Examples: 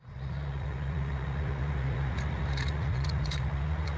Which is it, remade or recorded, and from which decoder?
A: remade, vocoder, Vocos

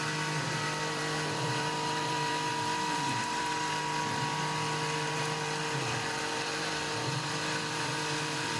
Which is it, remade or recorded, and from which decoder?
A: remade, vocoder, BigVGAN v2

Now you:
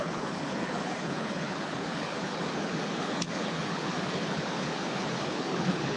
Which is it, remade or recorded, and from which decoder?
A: remade, codec, HILCodec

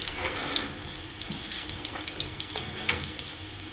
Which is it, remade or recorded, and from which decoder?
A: remade, codec, SNAC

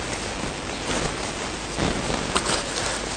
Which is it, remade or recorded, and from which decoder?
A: recorded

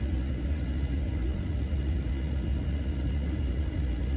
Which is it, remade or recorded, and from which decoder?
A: remade, vocoder, Vocos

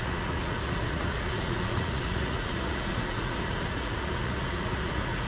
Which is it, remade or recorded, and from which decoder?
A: remade, vocoder, Vocos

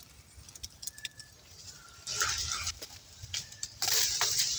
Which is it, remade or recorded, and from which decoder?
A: recorded